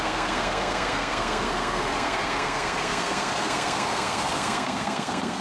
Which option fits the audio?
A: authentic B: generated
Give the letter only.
B